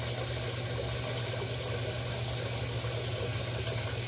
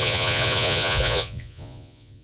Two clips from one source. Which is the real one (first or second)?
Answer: first